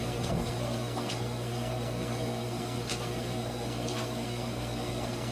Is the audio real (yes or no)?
no